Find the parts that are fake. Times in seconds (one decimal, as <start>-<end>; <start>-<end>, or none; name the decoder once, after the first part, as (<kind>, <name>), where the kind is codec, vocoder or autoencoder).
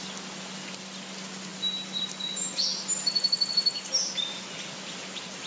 none